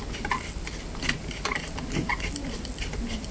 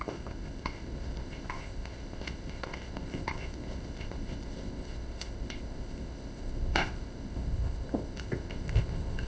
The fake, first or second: second